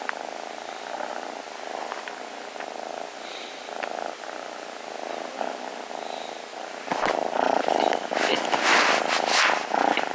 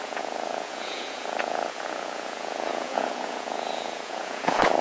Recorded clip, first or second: first